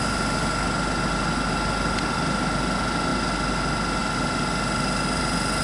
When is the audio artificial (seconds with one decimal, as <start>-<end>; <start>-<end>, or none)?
none